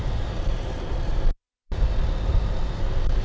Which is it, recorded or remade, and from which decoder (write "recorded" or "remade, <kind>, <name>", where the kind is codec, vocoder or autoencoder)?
recorded